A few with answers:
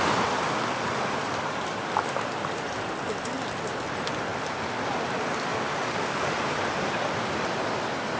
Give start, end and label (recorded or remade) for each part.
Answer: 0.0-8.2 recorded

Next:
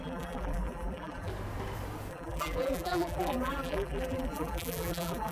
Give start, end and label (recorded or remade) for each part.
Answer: 0.0-1.3 remade; 1.3-2.1 recorded; 2.1-5.3 remade